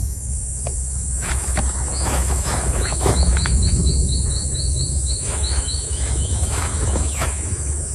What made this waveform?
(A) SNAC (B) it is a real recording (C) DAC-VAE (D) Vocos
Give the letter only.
C